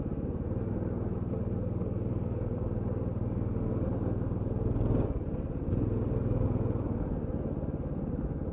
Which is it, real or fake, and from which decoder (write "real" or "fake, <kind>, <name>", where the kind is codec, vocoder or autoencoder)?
real